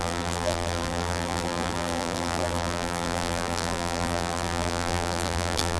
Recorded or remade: remade